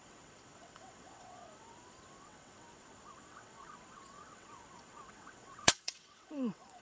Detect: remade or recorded remade